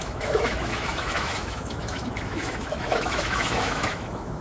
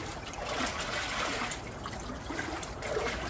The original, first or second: second